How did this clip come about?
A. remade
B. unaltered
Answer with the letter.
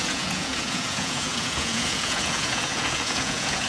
A